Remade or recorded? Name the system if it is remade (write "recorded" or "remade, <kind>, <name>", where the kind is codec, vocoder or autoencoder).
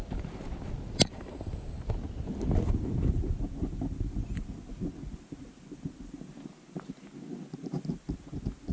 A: recorded